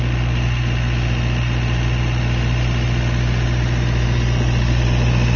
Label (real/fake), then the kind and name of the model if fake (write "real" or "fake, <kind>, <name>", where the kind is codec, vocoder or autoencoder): real